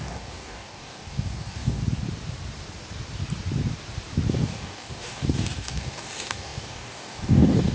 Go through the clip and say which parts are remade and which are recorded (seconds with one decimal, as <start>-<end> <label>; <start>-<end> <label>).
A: 0.0-1.8 remade; 1.8-4.3 recorded; 4.3-7.7 remade